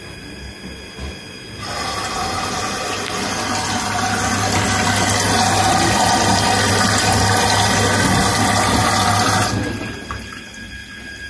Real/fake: real